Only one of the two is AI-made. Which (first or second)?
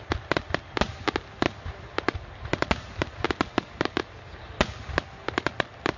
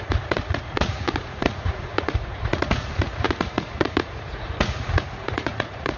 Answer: second